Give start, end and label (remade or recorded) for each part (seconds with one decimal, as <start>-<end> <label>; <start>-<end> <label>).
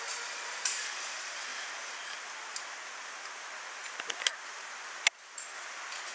0.0-1.5 remade; 1.5-5.2 recorded; 5.2-6.1 remade